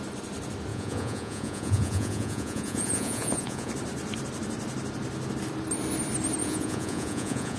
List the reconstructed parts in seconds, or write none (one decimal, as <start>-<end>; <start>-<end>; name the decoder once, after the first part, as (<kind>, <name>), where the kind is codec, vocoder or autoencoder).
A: 0.7-3.7 (vocoder, Vocos); 6.4-7.6